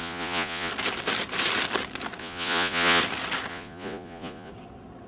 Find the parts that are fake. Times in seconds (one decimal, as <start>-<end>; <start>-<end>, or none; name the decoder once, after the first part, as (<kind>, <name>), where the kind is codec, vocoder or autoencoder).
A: 0.0-0.7 (vocoder, Vocos); 2.2-3.0; 3.5-4.5

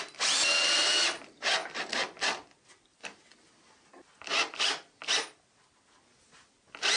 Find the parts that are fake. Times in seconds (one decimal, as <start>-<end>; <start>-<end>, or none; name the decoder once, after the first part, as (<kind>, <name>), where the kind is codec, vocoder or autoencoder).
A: none

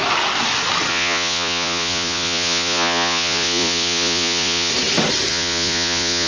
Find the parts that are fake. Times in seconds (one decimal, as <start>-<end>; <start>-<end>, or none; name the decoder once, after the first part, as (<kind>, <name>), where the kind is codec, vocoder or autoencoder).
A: 0.9-4.7 (vocoder, Vocos); 5.3-6.3

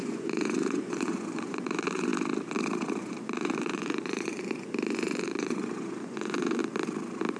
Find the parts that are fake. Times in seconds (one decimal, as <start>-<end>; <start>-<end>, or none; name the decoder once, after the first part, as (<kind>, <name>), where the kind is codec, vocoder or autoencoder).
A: 0.0-2.1 (vocoder, Vocos); 3.0-6.6

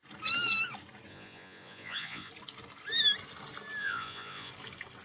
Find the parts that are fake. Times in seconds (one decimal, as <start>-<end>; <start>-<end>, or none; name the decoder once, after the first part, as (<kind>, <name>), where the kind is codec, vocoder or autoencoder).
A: 1.1-2.3 (vocoder, Vocos); 3.8-4.5